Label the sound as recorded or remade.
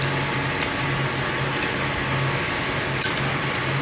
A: recorded